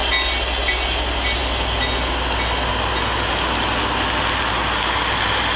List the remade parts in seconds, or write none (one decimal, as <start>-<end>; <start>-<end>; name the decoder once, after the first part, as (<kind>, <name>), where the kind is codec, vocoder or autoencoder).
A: none